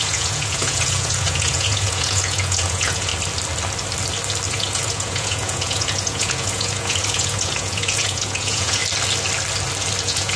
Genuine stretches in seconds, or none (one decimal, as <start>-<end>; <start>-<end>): 3.1-4.5; 8.8-10.0

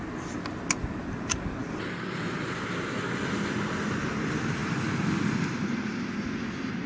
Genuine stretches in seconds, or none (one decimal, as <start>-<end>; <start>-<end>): 0.0-6.9

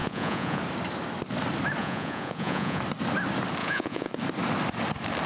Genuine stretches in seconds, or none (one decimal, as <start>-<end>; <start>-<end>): 0.6-1.8; 2.8-3.6; 4.1-5.3

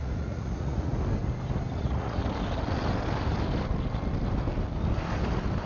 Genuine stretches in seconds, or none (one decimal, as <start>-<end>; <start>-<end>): 0.9-1.8; 2.2-5.7